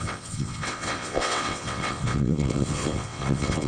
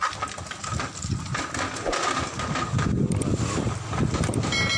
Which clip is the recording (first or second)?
second